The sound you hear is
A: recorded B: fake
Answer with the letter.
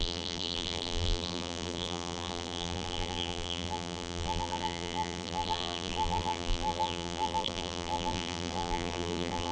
B